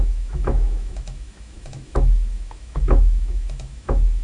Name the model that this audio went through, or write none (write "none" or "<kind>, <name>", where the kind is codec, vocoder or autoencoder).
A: autoencoder, DAC-VAE